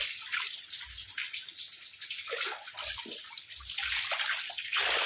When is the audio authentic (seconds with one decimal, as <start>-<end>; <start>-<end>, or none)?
0.0-5.1